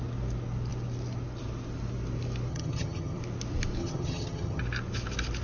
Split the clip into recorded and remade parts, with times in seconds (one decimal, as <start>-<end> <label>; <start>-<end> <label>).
0.0-2.5 recorded; 2.5-3.2 remade; 3.2-3.8 recorded; 3.8-4.6 remade; 4.6-5.4 recorded